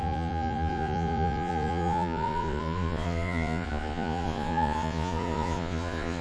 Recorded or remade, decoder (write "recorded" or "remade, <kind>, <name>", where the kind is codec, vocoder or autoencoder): remade, vocoder, Vocos